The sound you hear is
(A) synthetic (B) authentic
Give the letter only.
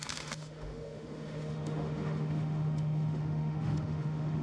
A